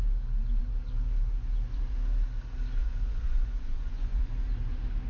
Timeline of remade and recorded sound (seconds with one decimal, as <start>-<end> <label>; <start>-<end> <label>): 0.0-2.8 recorded; 2.8-4.3 remade; 4.3-5.1 recorded